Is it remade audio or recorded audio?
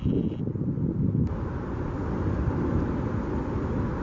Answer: recorded